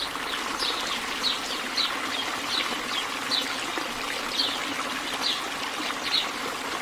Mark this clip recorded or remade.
recorded